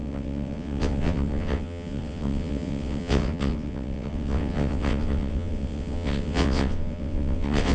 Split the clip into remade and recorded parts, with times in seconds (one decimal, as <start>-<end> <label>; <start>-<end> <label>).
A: 0.0-7.7 remade